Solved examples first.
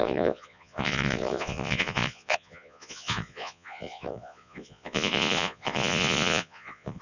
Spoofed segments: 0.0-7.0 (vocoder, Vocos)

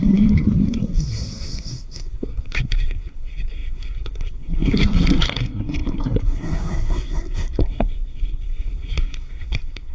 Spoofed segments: 0.0-9.9 (codec, SNAC)

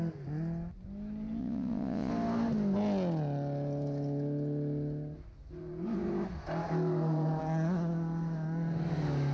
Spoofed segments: 1.4-2.1 (vocoder, Vocos)

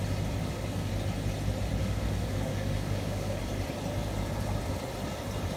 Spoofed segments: 0.4-0.9 (codec, DAC); 1.8-3.4